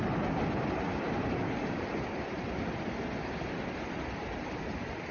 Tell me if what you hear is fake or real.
real